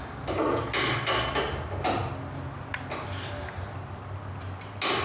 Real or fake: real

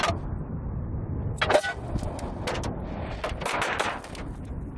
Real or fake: real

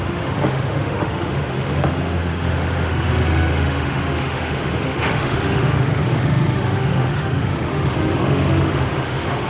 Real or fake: fake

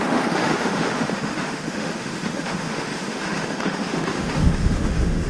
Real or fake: fake